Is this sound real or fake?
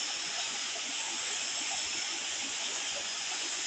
fake